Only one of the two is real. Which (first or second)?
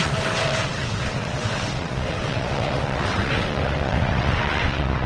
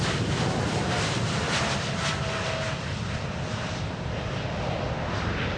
second